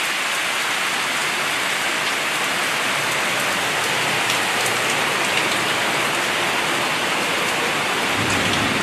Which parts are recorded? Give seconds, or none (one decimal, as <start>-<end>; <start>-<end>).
0.0-8.8